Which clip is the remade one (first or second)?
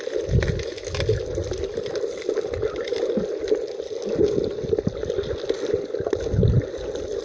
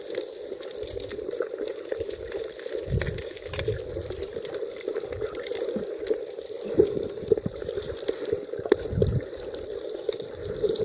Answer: second